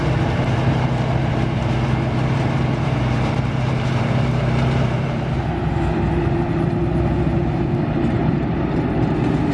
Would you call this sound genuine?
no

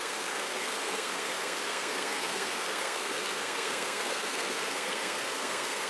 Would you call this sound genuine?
no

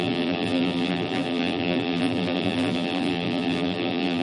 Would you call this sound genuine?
no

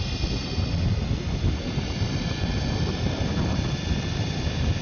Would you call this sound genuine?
yes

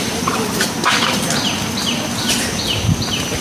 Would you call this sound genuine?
yes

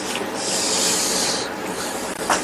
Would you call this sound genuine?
yes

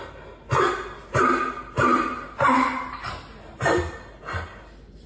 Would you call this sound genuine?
yes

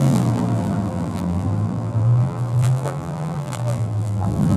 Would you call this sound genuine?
no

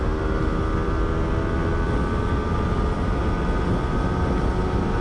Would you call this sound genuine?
yes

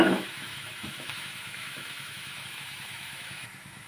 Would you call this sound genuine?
no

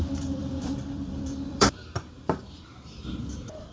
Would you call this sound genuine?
no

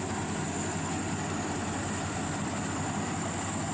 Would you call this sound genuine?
yes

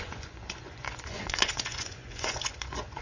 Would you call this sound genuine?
no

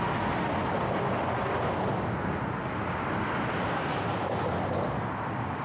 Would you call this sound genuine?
yes